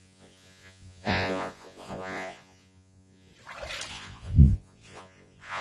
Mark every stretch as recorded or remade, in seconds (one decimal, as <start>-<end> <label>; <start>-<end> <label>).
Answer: 0.0-3.3 remade; 3.3-3.9 recorded; 3.9-5.6 remade